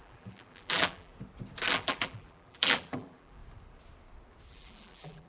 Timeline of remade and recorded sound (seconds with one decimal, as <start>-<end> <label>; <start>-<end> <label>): 0.0-1.1 remade; 1.1-1.7 recorded; 1.7-3.4 remade; 3.4-4.5 recorded; 4.5-5.3 remade